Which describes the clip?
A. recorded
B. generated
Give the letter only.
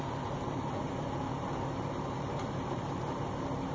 A